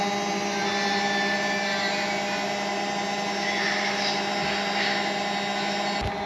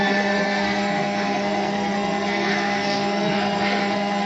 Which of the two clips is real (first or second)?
first